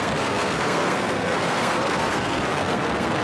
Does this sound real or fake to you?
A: fake